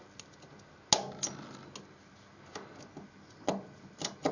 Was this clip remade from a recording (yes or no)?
no